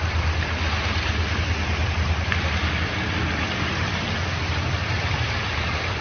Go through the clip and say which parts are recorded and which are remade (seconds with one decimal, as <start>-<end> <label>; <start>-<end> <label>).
0.0-1.8 recorded; 1.8-3.2 remade; 3.2-6.0 recorded

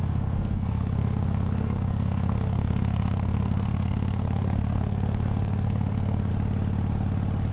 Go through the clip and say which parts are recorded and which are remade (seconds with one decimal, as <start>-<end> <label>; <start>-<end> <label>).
0.0-6.3 remade; 6.3-7.5 recorded

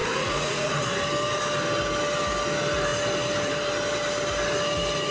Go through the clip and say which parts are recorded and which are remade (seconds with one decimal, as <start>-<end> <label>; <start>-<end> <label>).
0.0-0.8 remade; 0.8-5.1 recorded

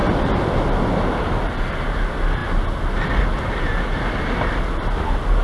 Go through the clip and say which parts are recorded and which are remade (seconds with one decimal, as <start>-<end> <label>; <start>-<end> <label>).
0.0-5.4 recorded

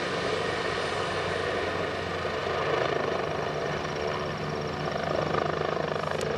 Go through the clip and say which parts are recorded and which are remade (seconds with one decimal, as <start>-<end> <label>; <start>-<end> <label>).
0.0-6.4 recorded

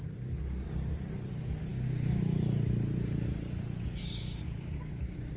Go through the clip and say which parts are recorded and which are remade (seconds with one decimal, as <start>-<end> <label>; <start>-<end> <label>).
0.0-1.7 remade; 1.7-4.4 recorded; 4.4-5.4 remade